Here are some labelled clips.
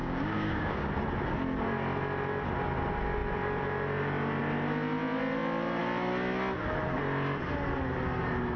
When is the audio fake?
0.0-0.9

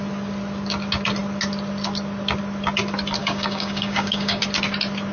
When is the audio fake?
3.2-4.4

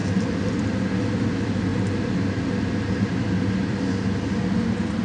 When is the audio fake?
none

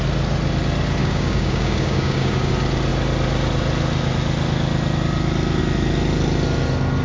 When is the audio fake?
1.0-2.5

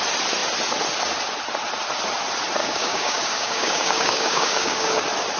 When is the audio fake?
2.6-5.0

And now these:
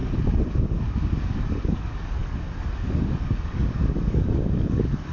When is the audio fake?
0.5-5.1

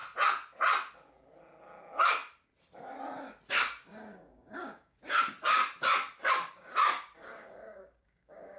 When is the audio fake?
3.5-5.6; 6.3-8.6